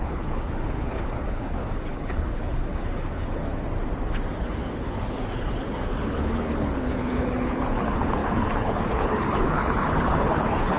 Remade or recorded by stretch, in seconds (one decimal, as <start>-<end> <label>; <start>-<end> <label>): 0.0-3.4 remade; 3.4-4.4 recorded; 4.4-10.8 remade